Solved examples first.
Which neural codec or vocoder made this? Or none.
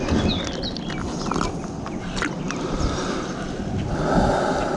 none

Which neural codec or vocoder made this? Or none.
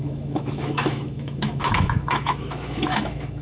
autoencoder, DAC-VAE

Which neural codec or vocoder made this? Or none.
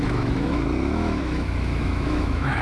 autoencoder, DAC-VAE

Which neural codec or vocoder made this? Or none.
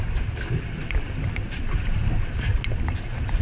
none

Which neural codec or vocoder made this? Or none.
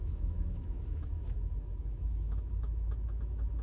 autoencoder, DAC-VAE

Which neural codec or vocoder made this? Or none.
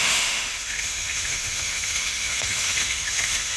autoencoder, DAC-VAE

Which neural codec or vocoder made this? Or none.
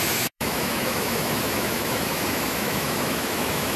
autoencoder, DAC-VAE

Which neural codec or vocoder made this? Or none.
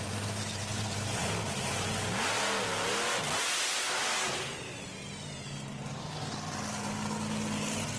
none